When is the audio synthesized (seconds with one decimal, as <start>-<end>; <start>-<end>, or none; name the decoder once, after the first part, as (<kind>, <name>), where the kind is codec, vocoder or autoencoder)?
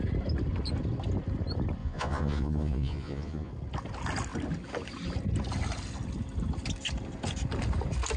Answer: 1.8-3.5 (vocoder, Vocos)